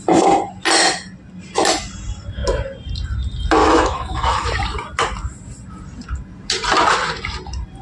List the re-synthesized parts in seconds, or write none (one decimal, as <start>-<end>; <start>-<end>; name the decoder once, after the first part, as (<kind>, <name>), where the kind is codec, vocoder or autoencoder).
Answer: 3.6-4.5 (autoencoder, DAC-VAE)